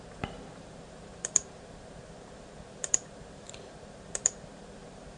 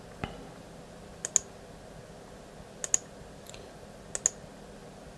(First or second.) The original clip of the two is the second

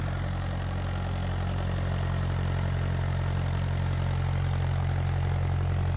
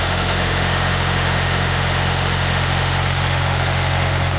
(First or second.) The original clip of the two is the first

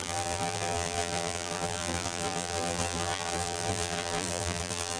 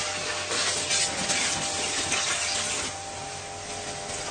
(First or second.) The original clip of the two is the second